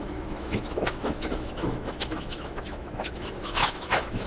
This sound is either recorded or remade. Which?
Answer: remade